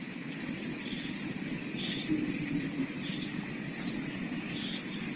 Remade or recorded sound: recorded